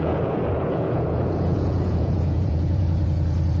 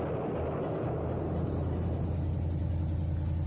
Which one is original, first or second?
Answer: second